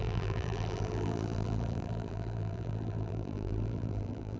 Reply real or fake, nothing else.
fake